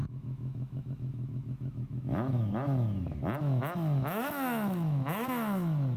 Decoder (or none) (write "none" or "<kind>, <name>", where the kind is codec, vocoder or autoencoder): autoencoder, DAC-VAE